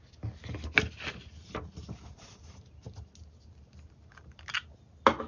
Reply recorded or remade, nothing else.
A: recorded